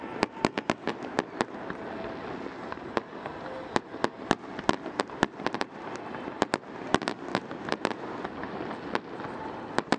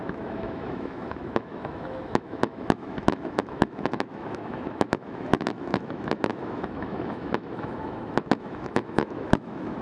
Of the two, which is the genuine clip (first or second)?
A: first